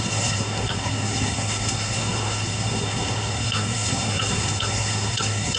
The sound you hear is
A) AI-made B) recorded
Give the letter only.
A